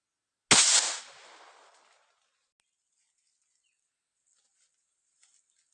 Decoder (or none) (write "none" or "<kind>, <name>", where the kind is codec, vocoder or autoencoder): none